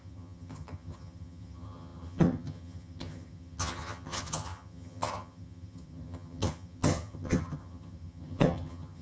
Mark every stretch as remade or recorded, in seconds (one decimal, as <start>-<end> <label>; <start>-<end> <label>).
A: 0.0-9.0 remade